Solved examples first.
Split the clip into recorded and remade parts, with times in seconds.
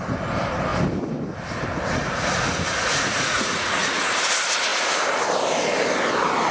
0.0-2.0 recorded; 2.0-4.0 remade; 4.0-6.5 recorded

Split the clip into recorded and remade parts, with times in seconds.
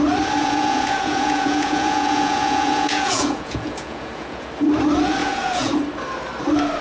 0.0-0.4 recorded; 0.4-4.5 remade; 4.5-5.2 recorded; 5.2-5.7 remade; 5.7-6.8 recorded